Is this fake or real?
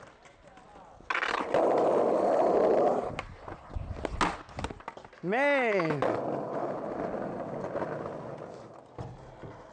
real